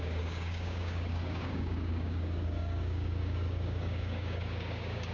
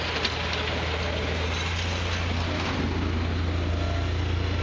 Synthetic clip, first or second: first